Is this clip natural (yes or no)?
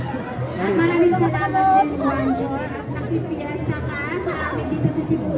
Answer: yes